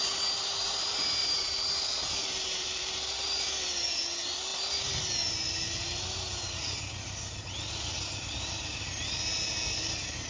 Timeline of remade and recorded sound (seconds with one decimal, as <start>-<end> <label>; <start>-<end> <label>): 0.0-1.2 recorded; 1.2-3.5 remade; 3.5-10.3 recorded